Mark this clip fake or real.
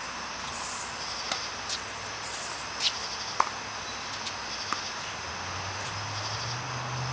real